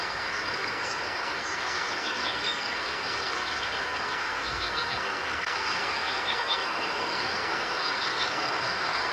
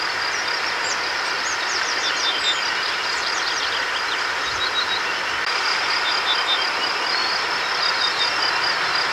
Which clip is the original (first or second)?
second